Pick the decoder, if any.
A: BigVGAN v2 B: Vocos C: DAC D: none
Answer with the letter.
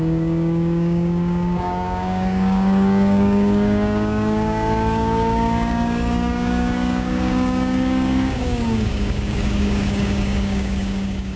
C